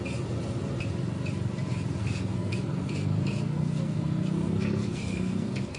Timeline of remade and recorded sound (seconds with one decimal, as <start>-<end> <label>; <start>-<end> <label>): 0.0-2.0 recorded; 2.0-5.8 remade